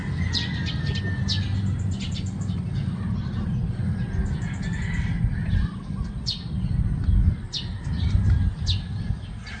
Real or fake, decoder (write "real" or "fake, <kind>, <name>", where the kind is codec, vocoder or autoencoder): real